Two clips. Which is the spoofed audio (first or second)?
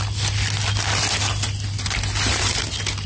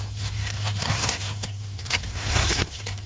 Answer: second